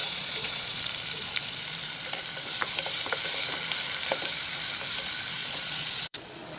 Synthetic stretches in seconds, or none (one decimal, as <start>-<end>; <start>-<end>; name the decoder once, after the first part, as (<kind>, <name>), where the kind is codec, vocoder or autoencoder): 0.0-0.8 (vocoder, Vocos); 5.4-6.6